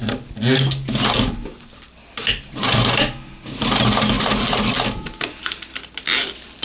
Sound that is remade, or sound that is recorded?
recorded